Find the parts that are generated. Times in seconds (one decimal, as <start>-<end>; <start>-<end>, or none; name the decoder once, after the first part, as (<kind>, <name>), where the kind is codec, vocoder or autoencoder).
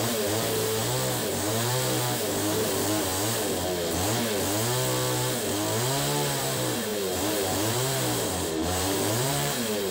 0.0-0.8 (vocoder, BigVGAN v2); 1.3-3.1; 6.4-9.9